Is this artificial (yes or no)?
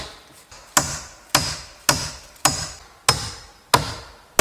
no